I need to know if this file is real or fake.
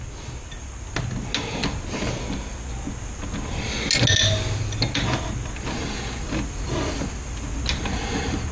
real